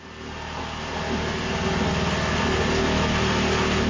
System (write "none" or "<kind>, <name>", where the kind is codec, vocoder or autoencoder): none